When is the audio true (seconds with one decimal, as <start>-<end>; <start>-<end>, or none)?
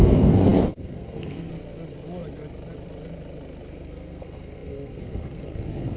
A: 1.5-3.7